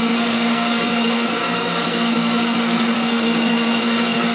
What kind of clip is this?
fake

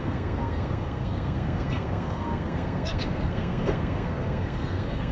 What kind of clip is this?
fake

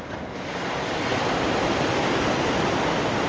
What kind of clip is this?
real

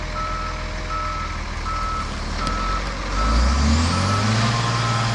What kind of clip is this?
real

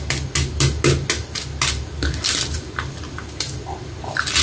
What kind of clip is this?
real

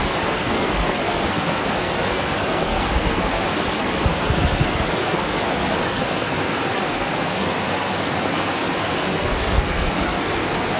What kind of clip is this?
fake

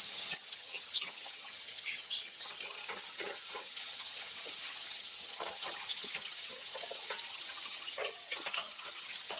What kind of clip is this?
fake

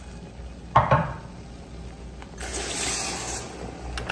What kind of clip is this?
real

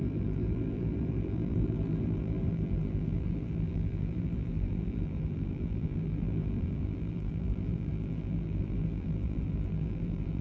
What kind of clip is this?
fake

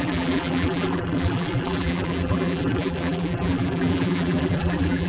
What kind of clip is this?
fake